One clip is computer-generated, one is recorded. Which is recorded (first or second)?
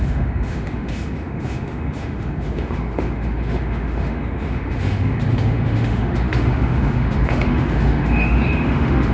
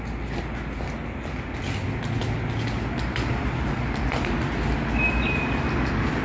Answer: second